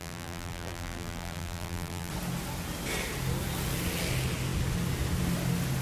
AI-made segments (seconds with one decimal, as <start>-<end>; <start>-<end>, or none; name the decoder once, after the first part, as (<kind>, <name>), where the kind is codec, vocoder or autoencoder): 0.0-2.1 (vocoder, BigVGAN v2)

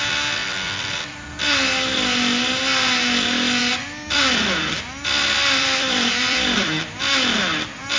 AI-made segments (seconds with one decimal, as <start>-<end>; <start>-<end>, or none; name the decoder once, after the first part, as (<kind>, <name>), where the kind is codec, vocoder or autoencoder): 0.4-1.3 (vocoder, BigVGAN v2); 3.6-7.0

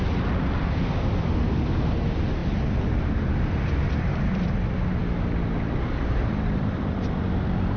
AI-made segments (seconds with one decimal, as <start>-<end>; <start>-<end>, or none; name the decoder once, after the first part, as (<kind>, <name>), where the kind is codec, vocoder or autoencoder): 0.0-5.0 (vocoder, BigVGAN v2); 5.8-7.8

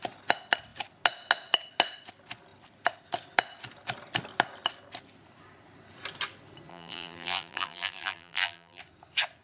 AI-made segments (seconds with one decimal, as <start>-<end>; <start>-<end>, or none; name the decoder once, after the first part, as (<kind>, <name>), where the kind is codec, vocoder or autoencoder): 6.7-8.8 (vocoder, BigVGAN v2)

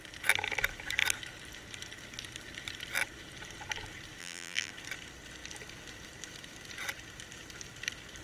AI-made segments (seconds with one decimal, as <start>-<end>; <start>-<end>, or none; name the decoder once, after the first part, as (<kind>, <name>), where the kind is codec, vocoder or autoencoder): 4.2-4.7 (vocoder, BigVGAN v2)

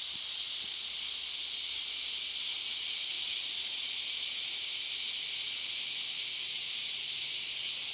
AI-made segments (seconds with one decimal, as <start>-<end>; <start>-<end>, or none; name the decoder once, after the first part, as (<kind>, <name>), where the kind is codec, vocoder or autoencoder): 0.0-0.4 (vocoder, BigVGAN v2); 2.5-3.1; 6.0-7.9

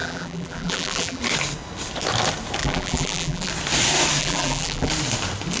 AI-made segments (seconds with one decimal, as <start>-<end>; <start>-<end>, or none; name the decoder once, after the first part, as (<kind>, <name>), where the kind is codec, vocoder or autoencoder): 0.0-1.2 (vocoder, BigVGAN v2); 2.6-3.5; 4.2-4.9